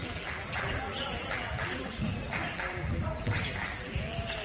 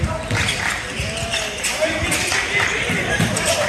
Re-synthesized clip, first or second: first